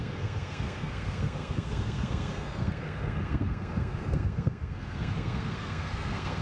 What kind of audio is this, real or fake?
fake